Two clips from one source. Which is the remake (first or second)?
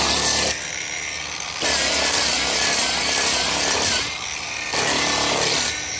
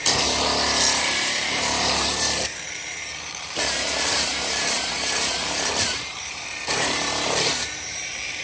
second